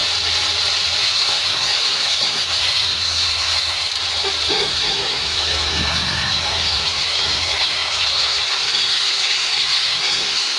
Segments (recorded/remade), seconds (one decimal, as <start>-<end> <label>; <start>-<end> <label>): 0.0-1.0 recorded; 1.0-3.9 remade; 3.9-4.5 recorded; 4.5-10.6 remade